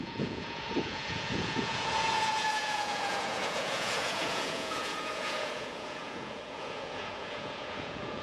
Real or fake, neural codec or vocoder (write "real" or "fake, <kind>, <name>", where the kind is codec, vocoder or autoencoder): fake, vocoder, Vocos